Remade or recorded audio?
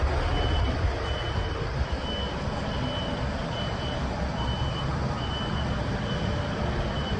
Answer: recorded